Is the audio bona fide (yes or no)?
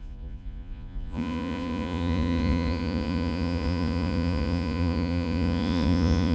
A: no